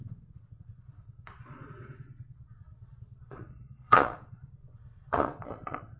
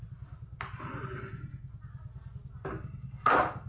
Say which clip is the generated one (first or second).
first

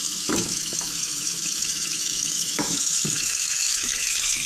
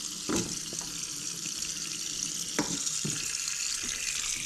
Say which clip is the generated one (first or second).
first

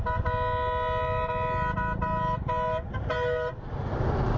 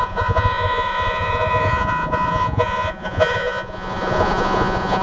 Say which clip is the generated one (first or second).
second